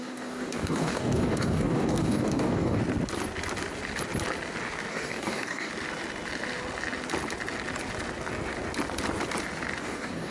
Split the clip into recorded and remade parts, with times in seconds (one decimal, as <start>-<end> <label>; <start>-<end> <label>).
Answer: 0.0-2.8 remade; 2.8-4.9 recorded; 4.9-5.7 remade; 5.7-9.8 recorded; 9.8-10.3 remade